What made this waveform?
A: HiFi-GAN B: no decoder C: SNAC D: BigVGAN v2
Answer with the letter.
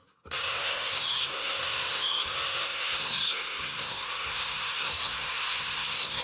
C